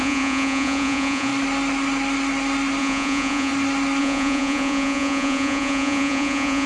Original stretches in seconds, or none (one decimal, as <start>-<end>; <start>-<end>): 1.3-2.8; 3.5-4.0